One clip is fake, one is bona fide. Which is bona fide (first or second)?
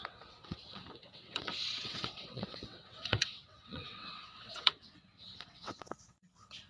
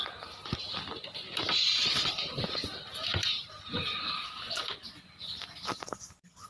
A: second